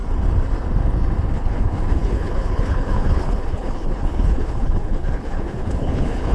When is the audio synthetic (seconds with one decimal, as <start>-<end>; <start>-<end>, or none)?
1.3-6.3